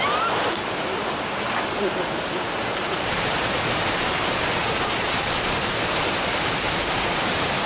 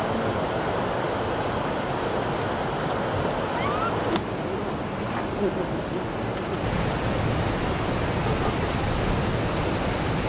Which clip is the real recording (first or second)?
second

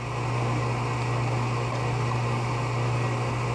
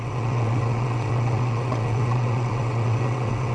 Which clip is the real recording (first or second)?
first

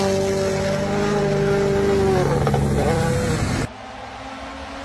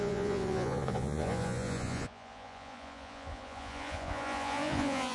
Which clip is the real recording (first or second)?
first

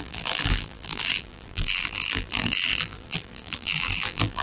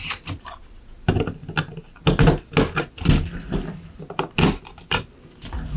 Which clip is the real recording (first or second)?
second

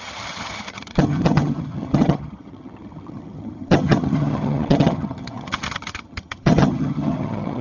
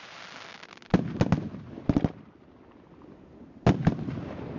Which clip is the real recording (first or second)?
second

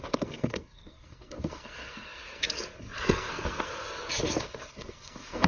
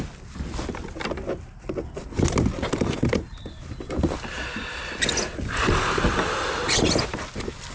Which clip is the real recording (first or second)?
second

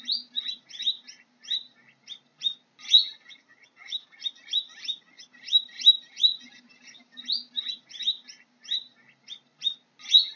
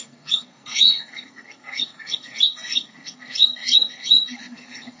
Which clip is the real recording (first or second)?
first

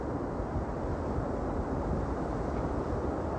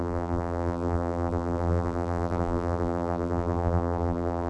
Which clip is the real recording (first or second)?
first